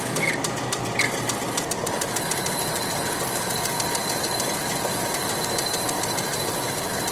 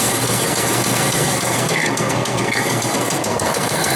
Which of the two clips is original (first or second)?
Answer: first